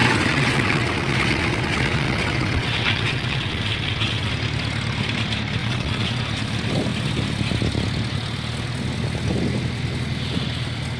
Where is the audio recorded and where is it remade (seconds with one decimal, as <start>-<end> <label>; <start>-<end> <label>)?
0.0-4.3 remade; 4.3-5.6 recorded; 5.6-6.2 remade; 6.2-11.0 recorded